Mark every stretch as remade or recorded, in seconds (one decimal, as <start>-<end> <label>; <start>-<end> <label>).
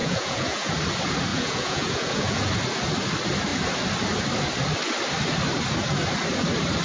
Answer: 0.0-0.7 remade; 0.7-1.3 recorded; 1.3-2.5 remade; 2.5-6.8 recorded